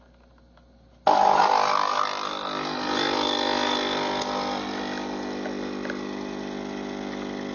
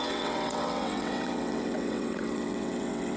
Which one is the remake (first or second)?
second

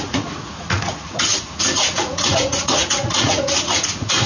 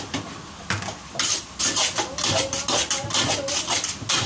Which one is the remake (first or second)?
first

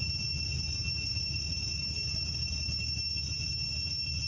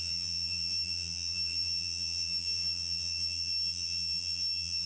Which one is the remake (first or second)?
second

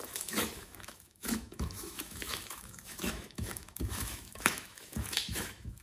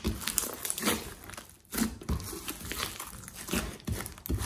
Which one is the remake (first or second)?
first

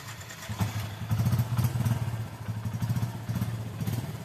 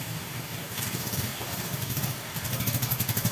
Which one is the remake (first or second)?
second